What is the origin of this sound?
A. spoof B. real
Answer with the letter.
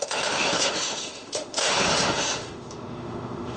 A